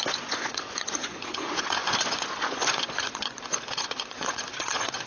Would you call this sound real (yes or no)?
no